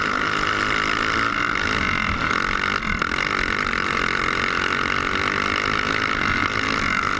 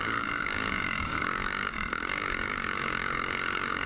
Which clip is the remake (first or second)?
second